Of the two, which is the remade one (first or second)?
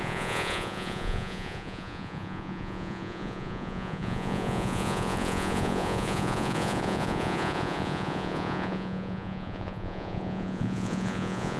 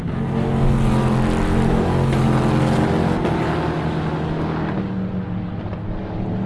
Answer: first